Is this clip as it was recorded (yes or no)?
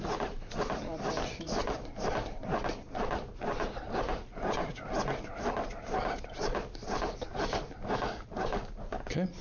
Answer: yes